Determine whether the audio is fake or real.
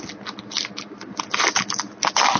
real